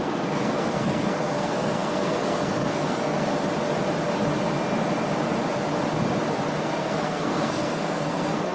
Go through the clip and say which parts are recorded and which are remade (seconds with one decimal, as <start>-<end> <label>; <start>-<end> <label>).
0.0-3.3 remade; 3.3-6.6 recorded; 6.6-8.5 remade